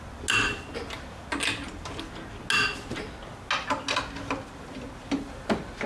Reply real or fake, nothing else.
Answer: real